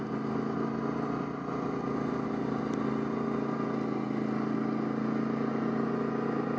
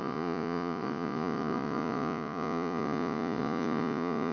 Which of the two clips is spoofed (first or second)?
second